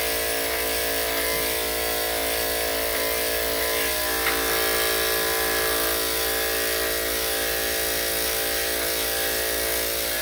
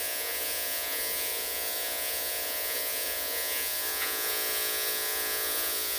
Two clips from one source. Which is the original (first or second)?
first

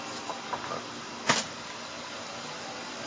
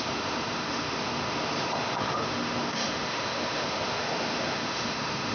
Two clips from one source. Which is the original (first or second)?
first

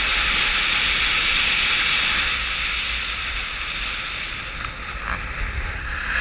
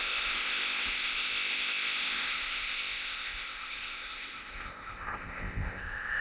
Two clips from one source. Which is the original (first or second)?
first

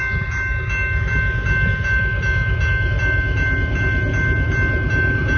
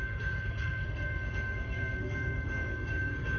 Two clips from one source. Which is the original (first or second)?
first